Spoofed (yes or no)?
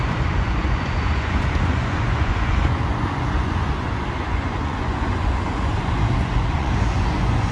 yes